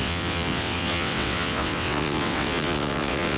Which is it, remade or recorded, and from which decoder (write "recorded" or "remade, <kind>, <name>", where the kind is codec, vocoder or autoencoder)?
remade, vocoder, WaveNeXt